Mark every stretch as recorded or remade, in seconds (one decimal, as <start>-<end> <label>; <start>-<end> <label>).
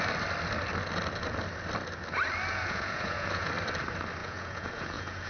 0.0-2.5 recorded; 2.5-3.5 remade; 3.5-4.2 recorded; 4.2-5.3 remade